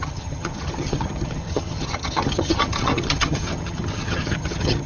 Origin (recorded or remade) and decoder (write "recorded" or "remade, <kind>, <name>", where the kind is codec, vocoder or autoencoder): remade, vocoder, HiFi-GAN